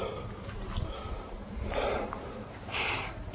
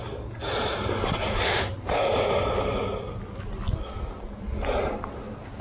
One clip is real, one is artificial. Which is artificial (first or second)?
first